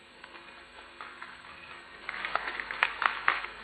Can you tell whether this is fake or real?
fake